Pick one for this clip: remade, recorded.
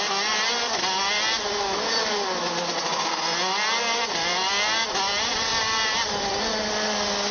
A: recorded